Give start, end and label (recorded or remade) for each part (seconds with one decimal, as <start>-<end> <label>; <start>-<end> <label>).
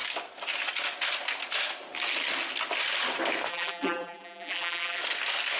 0.0-3.5 recorded; 3.5-5.0 remade; 5.0-5.6 recorded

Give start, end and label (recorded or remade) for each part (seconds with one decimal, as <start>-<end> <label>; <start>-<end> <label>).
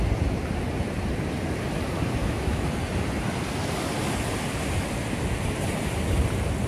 0.0-2.2 recorded; 2.2-2.7 remade; 2.7-6.7 recorded